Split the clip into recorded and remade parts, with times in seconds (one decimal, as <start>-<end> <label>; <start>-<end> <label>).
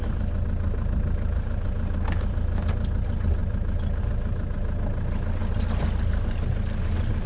0.0-7.3 recorded